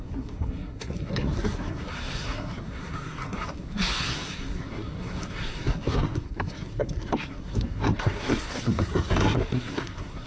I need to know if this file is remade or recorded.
remade